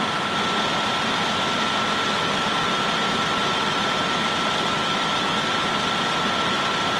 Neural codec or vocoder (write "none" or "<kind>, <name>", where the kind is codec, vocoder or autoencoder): none